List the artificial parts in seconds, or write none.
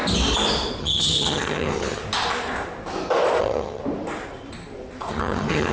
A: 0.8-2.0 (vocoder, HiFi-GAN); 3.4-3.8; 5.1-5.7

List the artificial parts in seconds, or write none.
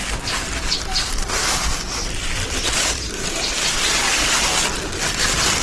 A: none